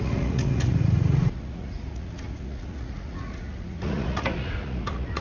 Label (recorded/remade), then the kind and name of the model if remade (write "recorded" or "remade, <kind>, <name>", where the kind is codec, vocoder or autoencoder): remade, vocoder, Vocos